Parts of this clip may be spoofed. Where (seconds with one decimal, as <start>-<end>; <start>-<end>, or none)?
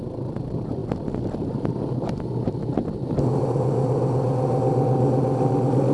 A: none